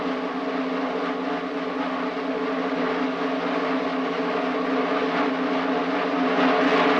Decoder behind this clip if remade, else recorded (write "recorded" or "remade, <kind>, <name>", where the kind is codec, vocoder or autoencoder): recorded